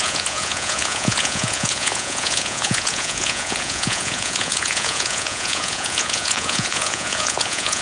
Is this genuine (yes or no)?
no